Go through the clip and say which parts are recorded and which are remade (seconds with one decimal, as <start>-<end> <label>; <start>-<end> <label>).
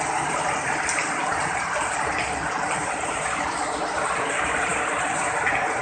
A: 0.0-5.8 recorded